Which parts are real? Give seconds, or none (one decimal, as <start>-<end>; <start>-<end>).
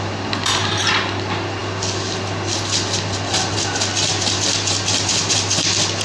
0.0-6.0